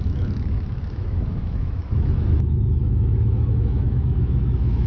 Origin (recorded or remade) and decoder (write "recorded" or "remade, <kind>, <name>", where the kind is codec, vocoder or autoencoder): remade, autoencoder, DAC-VAE